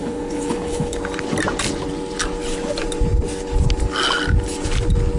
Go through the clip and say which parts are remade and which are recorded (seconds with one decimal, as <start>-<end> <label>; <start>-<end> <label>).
0.0-1.0 remade; 1.0-5.2 recorded